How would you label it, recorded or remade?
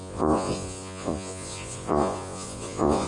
remade